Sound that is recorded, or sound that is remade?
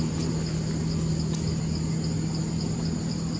recorded